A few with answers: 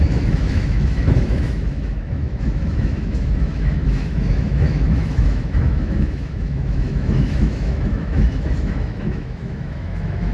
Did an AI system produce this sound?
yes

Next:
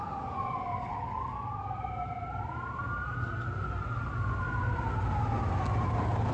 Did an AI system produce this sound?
no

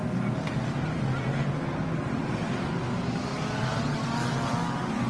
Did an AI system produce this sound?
no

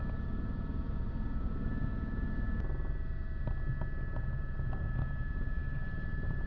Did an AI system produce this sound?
no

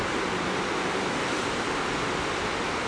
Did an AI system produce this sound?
no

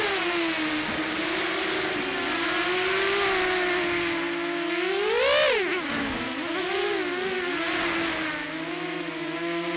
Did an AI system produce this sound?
no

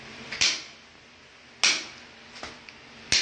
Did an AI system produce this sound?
no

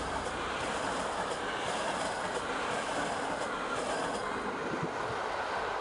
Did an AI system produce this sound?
no